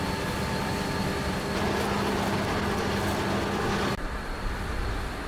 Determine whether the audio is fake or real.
real